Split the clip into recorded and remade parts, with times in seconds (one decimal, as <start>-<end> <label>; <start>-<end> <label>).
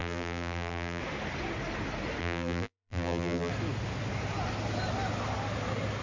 0.0-1.0 remade; 1.0-2.2 recorded; 2.2-3.5 remade; 3.5-6.0 recorded